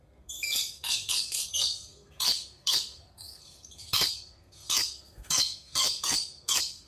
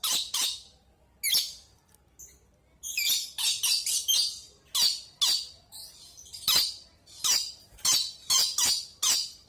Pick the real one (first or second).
second